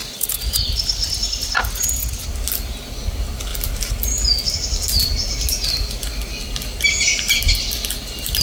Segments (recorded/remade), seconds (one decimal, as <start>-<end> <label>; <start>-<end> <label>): 0.0-5.0 recorded; 5.0-5.5 remade; 5.5-8.4 recorded